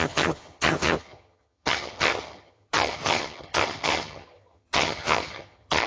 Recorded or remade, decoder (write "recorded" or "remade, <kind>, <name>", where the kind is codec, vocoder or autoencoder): remade, vocoder, HiFi-GAN